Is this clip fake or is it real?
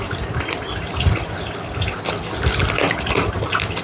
real